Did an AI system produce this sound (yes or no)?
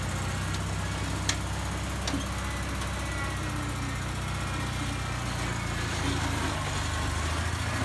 no